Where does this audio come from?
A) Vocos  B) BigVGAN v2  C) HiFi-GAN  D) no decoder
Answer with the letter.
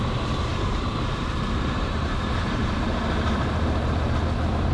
B